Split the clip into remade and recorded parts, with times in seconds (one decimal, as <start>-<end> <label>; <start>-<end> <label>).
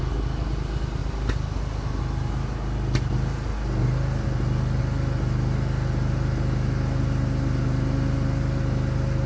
0.0-9.3 recorded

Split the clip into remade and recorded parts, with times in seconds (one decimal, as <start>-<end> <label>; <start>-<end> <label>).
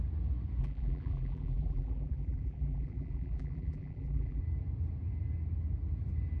0.0-0.6 recorded; 0.6-4.4 remade; 4.4-6.4 recorded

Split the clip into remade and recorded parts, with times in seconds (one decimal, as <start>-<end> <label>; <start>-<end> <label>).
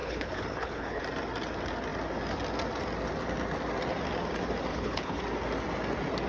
0.0-1.0 remade; 1.0-4.7 recorded; 4.7-5.2 remade; 5.2-6.3 recorded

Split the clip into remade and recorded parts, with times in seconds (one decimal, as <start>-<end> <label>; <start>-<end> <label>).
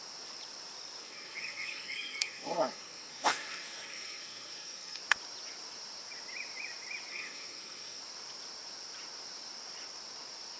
0.0-1.0 recorded; 1.0-5.0 remade; 5.0-7.1 recorded; 7.1-8.0 remade; 8.0-10.6 recorded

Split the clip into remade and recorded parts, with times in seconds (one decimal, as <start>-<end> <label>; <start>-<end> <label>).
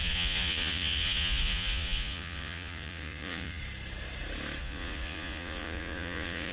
0.0-3.6 remade; 3.6-4.6 recorded; 4.6-6.5 remade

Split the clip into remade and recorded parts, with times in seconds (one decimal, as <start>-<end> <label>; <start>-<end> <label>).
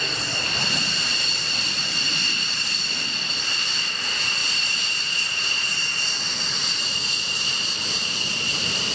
0.0-4.4 recorded; 4.4-5.9 remade; 5.9-6.6 recorded; 6.6-8.9 remade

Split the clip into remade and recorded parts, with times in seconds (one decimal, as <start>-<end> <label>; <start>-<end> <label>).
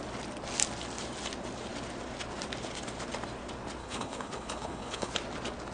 0.0-3.8 recorded; 3.8-5.1 remade; 5.1-5.7 recorded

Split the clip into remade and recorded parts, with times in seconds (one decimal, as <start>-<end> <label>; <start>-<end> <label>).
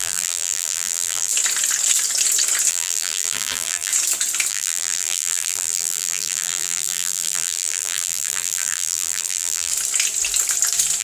0.0-1.3 remade; 1.3-2.7 recorded; 2.7-3.9 remade; 3.9-4.5 recorded; 4.5-9.7 remade; 9.7-11.0 recorded